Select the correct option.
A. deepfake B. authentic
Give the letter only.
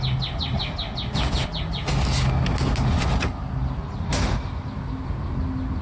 B